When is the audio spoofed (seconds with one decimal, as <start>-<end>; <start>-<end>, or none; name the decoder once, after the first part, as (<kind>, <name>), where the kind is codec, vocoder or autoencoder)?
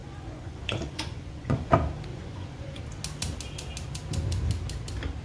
0.0-1.7 (vocoder, Vocos); 2.1-2.8